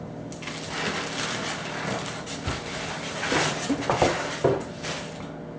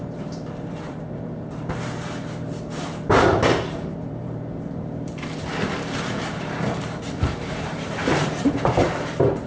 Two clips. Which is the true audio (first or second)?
first